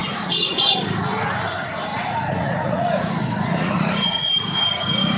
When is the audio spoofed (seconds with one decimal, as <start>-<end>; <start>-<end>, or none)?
0.0-0.8; 1.9-3.1; 3.6-4.3